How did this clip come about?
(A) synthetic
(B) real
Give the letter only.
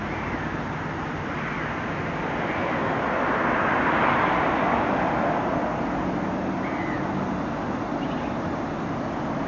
B